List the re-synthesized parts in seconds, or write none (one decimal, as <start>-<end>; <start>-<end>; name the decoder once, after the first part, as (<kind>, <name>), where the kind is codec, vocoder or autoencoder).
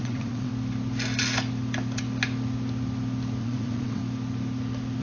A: 0.0-0.5 (vocoder, WaveNeXt); 3.4-4.0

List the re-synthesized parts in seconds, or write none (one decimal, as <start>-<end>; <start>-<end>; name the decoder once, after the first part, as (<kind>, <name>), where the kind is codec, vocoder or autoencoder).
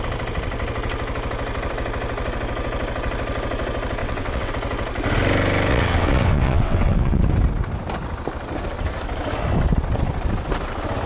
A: 4.0-4.5 (vocoder, WaveNeXt); 5.7-7.2